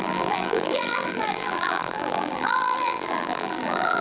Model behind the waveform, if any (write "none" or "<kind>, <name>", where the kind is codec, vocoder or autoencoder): vocoder, BigVGAN v2